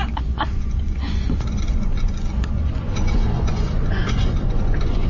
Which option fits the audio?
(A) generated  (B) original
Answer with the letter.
A